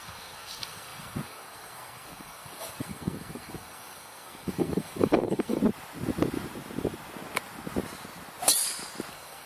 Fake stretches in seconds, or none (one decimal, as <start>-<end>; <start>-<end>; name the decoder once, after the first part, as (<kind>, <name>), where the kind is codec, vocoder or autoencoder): 0.0-5.6 (codec, SNAC); 9.1-9.5